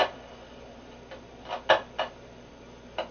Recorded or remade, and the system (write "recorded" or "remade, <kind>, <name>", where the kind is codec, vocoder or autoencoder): recorded